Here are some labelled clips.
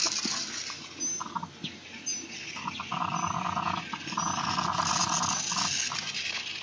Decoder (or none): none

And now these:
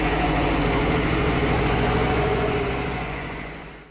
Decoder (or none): vocoder, Vocos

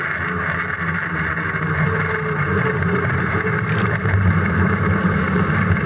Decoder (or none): none